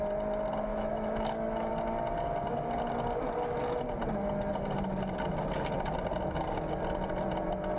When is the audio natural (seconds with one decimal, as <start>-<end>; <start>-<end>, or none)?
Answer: 0.0-0.7; 1.7-7.8